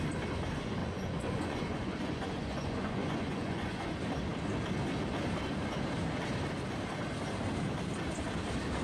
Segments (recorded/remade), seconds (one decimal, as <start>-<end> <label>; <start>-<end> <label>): 0.0-0.8 recorded; 0.8-3.9 remade; 3.9-8.8 recorded